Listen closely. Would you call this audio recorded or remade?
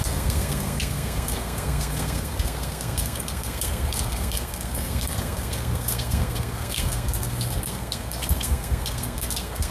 remade